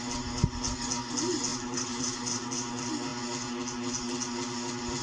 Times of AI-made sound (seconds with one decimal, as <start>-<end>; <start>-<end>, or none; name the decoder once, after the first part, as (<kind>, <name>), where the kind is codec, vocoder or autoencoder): 1.5-2.5 (vocoder, BigVGAN v2)